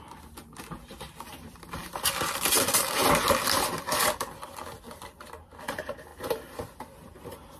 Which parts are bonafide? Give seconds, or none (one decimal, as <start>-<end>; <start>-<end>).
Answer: 0.0-7.6